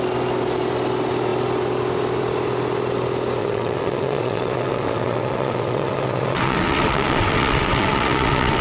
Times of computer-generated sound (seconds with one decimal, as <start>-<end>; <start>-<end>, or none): 3.4-8.6